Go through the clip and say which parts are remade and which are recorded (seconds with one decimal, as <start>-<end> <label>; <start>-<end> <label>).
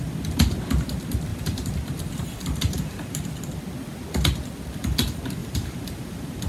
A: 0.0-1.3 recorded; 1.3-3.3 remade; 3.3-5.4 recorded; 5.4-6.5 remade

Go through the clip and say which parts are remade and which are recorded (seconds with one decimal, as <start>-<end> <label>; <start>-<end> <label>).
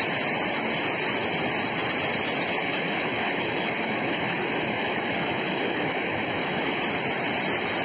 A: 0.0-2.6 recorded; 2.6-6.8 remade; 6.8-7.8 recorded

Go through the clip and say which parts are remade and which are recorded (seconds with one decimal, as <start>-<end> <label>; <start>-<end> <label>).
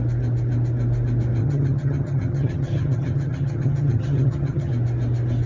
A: 0.0-1.4 recorded; 1.4-4.7 remade; 4.7-5.5 recorded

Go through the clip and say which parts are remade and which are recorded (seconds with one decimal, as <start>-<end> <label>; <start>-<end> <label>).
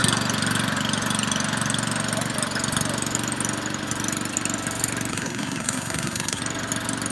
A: 0.0-5.1 recorded; 5.1-6.4 remade; 6.4-7.1 recorded